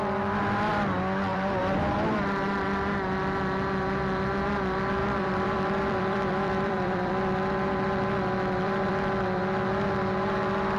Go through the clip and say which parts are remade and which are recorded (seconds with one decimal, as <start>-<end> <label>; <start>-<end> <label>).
0.0-1.3 recorded; 1.3-2.2 remade; 2.2-5.0 recorded; 5.0-7.1 remade; 7.1-8.6 recorded; 8.6-9.4 remade; 9.4-10.8 recorded